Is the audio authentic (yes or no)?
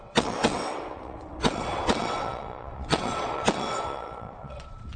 no